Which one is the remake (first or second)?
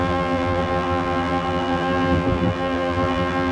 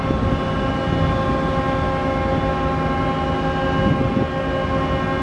first